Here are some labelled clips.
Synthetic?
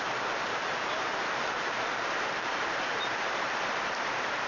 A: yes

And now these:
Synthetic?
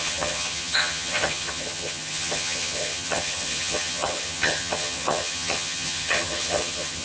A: yes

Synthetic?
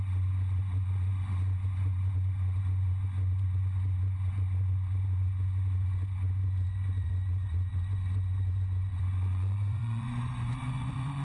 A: yes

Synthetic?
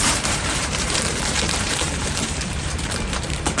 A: yes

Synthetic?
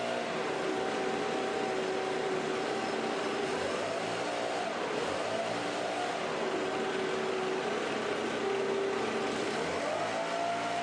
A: no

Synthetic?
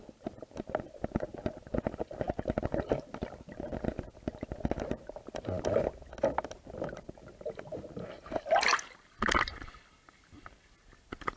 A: no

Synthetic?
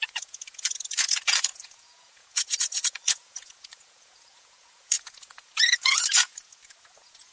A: yes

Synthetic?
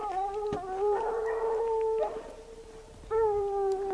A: no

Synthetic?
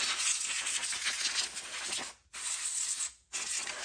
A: no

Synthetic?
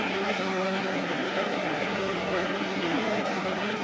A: yes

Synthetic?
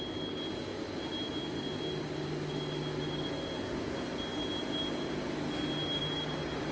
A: no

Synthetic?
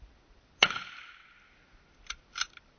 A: no